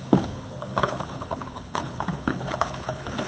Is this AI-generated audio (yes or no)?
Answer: yes